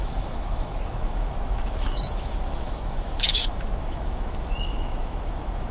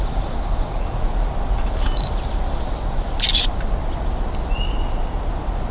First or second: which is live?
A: second